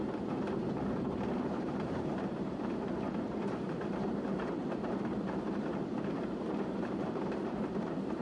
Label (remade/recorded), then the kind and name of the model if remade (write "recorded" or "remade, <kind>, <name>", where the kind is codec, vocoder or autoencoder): remade, vocoder, BigVGAN v2